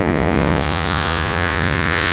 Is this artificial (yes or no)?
yes